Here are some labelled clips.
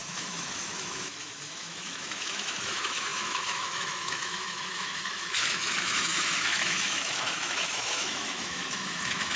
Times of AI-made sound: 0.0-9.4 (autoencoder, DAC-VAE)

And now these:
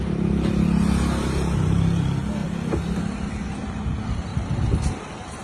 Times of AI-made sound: none

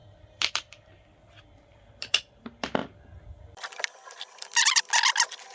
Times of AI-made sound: 0.0-2.4 (vocoder, BigVGAN v2); 2.8-4.8

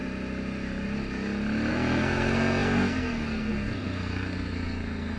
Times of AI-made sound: 1.7-5.2 (codec, SNAC)

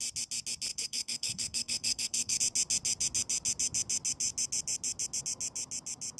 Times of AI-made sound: 0.7-2.4 (codec, SNAC)

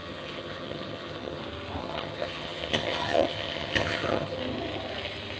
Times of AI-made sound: 0.0-1.4 (vocoder, HiFi-GAN); 1.8-4.4

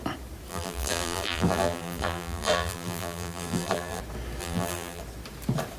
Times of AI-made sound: 0.5-4.0 (vocoder, BigVGAN v2); 4.4-5.0

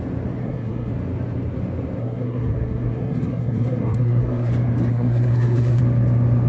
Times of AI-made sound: 0.4-0.9 (codec, SNAC); 2.0-4.5; 4.9-5.8